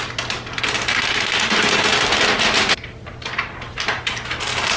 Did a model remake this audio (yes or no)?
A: no